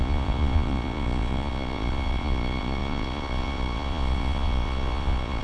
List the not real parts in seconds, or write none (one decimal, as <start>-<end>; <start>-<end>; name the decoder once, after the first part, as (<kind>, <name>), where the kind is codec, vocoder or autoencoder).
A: 0.0-5.4 (vocoder, Vocos)